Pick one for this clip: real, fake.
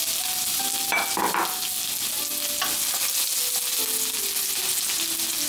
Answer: real